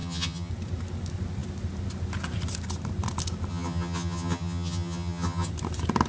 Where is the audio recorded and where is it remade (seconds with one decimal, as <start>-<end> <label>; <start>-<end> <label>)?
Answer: 0.0-0.5 remade; 0.5-3.5 recorded; 3.5-5.5 remade; 5.5-6.1 recorded